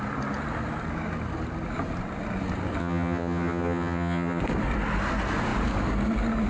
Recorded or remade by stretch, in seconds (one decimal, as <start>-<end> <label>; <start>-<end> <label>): 0.0-2.8 recorded; 2.8-4.4 remade; 4.4-6.5 recorded